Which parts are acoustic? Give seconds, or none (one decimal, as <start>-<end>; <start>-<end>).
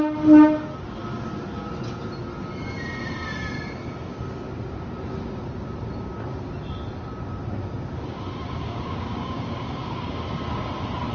0.0-8.6; 10.1-11.1